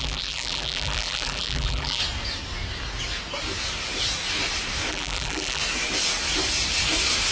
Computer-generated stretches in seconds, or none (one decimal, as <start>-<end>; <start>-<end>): 0.0-2.0; 4.9-5.6